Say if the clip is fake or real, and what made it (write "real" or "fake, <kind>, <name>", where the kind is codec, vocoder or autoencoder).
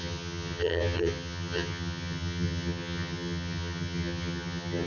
fake, vocoder, HiFi-GAN